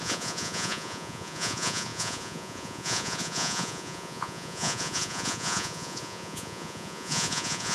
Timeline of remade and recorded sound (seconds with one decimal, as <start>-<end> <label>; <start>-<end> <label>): 0.0-7.7 remade